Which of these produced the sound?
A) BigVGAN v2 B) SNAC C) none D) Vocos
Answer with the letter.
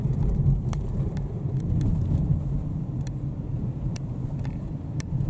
A